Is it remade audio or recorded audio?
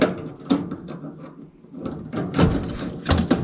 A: recorded